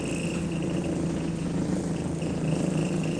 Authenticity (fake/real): real